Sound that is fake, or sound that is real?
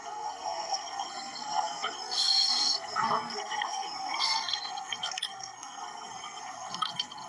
fake